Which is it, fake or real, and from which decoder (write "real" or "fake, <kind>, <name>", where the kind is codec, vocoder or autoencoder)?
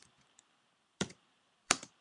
fake, vocoder, BigVGAN v2